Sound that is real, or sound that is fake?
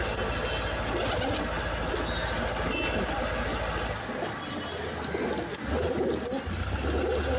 real